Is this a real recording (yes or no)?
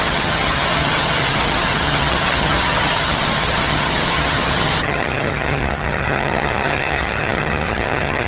no